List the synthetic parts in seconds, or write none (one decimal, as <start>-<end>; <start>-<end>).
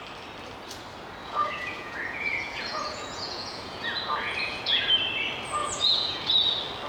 1.2-4.9; 5.6-6.3